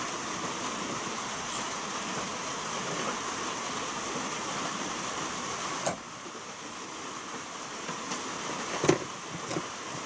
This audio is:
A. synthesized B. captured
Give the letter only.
B